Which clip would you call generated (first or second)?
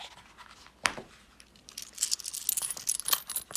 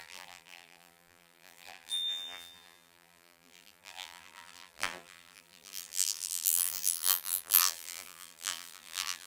second